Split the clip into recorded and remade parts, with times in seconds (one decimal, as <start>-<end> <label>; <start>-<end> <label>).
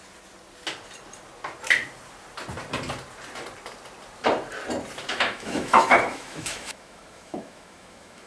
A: 0.0-5.1 recorded; 5.1-8.3 remade